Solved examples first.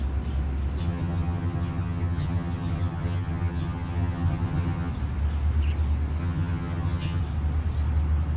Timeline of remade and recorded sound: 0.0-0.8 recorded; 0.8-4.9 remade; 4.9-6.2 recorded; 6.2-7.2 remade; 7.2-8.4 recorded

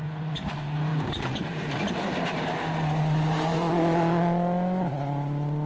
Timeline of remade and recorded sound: 0.0-0.9 recorded; 0.9-2.0 remade; 2.0-5.7 recorded

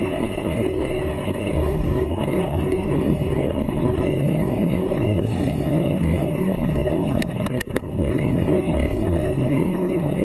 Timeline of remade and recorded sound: 0.0-10.2 remade

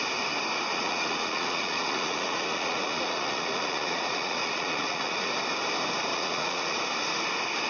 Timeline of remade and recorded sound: 0.0-0.7 recorded; 0.7-5.3 remade; 5.3-6.1 recorded; 6.1-6.8 remade; 6.8-7.7 recorded

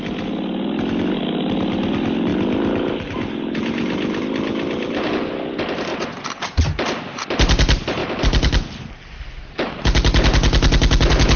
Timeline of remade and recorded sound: 0.0-2.3 recorded; 2.3-2.9 remade; 2.9-8.0 recorded; 8.0-8.9 remade; 8.9-11.4 recorded

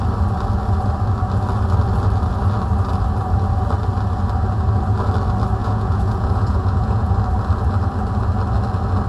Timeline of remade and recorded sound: 0.0-5.6 recorded; 5.6-7.1 remade; 7.1-9.1 recorded

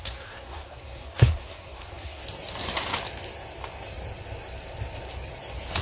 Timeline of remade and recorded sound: 0.0-2.2 remade; 2.2-5.8 recorded

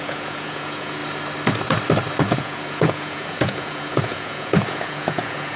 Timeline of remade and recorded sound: 0.0-1.0 remade; 1.0-2.2 recorded; 2.2-5.6 remade